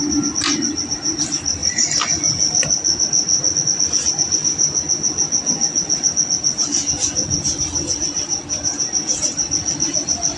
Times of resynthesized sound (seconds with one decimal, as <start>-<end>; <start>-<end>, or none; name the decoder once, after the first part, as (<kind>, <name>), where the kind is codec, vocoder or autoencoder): none